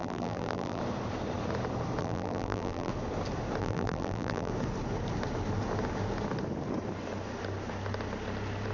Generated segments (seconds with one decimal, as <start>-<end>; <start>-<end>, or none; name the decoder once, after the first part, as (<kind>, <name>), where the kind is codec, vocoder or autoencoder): 0.0-0.8 (vocoder, BigVGAN v2); 2.0-2.9; 3.6-4.5